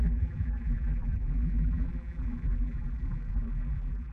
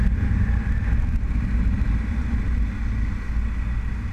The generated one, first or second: first